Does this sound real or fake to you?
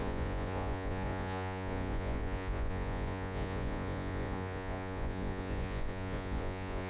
fake